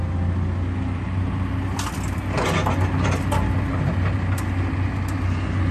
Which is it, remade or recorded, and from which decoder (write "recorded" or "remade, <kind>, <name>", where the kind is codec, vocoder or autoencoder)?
recorded